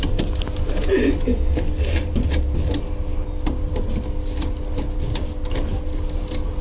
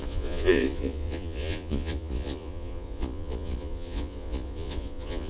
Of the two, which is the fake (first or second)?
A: second